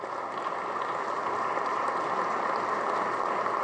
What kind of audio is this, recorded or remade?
recorded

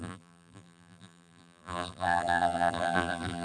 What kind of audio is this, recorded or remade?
remade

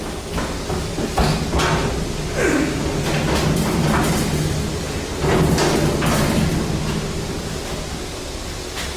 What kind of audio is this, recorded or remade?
recorded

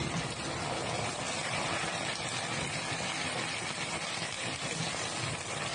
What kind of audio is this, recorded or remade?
recorded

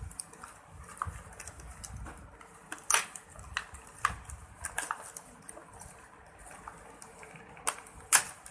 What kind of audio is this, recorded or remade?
recorded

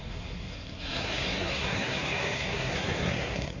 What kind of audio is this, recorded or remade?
remade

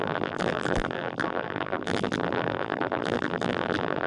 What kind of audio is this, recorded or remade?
remade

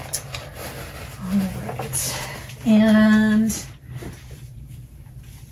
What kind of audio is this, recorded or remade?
recorded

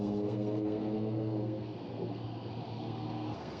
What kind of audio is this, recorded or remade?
remade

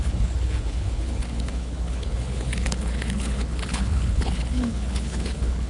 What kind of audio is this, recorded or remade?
remade